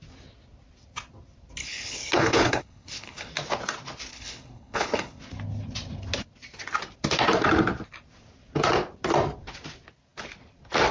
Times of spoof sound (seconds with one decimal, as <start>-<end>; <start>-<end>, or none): 1.6-3.3; 4.1-5.2